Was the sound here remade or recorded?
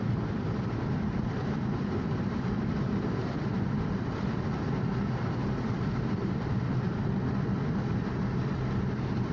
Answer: remade